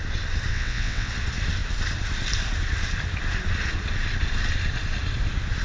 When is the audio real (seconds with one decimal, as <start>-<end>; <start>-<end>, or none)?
0.0-0.5; 1.1-5.6